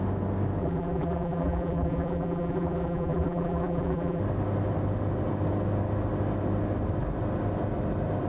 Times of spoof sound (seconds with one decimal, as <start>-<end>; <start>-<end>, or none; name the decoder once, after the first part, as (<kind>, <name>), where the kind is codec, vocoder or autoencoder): 0.6-4.2 (vocoder, BigVGAN v2)